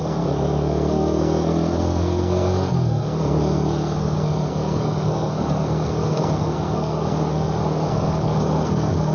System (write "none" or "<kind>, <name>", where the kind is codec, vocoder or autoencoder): codec, SNAC